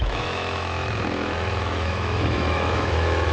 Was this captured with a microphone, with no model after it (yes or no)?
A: no